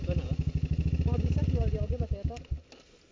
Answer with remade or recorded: recorded